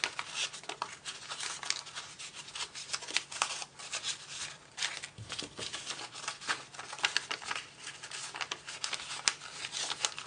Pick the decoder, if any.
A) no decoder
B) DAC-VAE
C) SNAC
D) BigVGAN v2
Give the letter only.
A